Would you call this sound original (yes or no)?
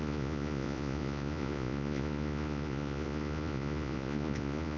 no